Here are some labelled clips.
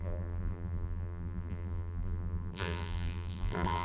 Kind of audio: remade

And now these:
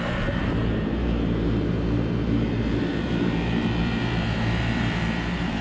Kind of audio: remade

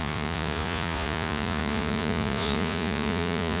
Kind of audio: remade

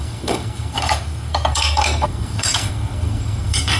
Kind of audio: remade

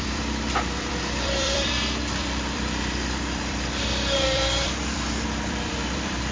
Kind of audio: remade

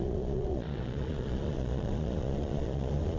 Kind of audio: remade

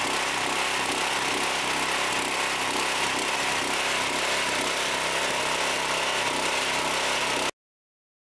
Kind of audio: recorded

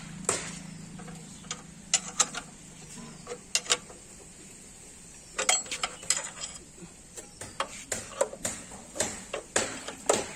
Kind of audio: recorded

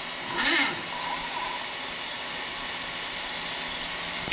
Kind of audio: recorded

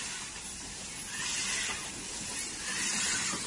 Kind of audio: recorded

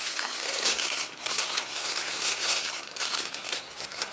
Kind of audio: remade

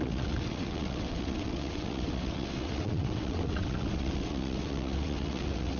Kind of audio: remade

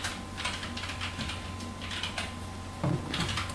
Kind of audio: recorded